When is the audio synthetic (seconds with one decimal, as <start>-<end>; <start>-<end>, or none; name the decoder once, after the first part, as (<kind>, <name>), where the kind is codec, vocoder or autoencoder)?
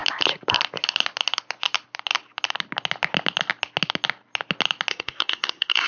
4.9-5.9 (codec, SNAC)